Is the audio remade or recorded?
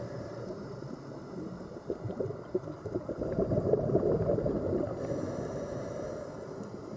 remade